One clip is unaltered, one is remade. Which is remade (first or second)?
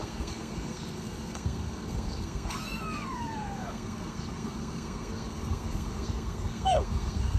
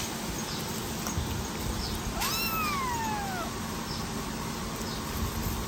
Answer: first